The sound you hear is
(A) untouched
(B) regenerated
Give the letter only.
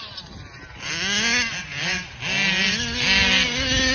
A